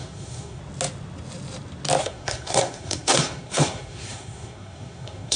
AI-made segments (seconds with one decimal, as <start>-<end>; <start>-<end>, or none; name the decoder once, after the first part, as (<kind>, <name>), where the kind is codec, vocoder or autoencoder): 0.0-0.6 (codec, SNAC); 2.0-5.4